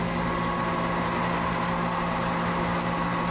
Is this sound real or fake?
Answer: real